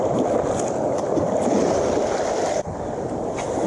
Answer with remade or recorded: recorded